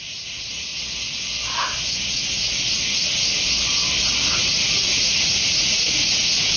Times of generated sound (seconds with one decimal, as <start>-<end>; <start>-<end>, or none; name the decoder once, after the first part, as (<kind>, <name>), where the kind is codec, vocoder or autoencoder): 0.0-0.7 (vocoder, Vocos); 4.3-6.6